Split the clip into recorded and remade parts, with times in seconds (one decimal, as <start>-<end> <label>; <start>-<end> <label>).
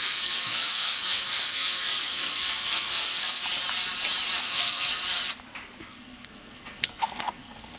0.0-3.4 remade; 3.4-4.4 recorded; 4.4-5.0 remade; 5.0-5.8 recorded; 5.8-7.8 remade